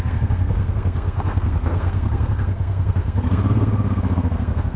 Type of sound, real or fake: fake